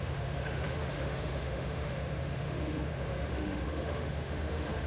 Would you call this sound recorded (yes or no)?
no